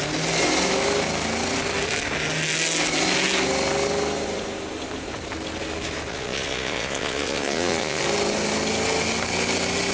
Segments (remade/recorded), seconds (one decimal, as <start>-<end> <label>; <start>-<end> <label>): 0.0-6.1 recorded; 6.1-8.0 remade; 8.0-9.9 recorded